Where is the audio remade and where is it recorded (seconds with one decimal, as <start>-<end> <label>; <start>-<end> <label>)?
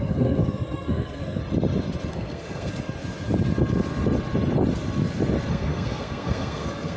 0.0-1.4 remade; 1.4-2.1 recorded; 2.1-2.7 remade; 2.7-5.5 recorded; 5.5-7.0 remade